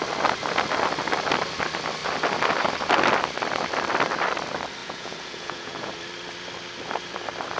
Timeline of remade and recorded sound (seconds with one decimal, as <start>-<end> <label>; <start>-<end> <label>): 0.0-4.8 recorded; 4.8-5.9 remade; 5.9-7.6 recorded